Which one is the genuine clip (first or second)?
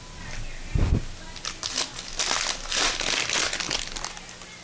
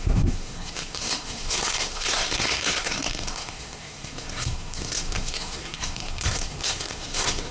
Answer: first